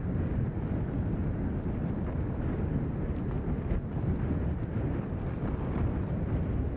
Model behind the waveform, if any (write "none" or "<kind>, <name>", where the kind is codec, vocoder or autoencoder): none